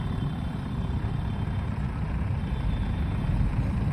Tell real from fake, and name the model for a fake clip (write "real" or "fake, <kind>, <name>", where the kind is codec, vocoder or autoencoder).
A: fake, vocoder, BigVGAN v2